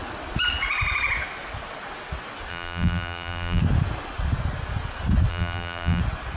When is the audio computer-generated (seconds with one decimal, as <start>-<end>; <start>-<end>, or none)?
2.5-3.6; 5.3-6.0